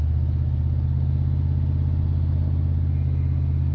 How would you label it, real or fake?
real